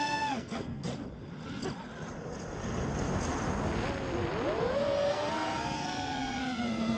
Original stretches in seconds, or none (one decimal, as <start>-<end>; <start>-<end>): 0.9-5.1